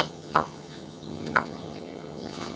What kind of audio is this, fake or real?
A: fake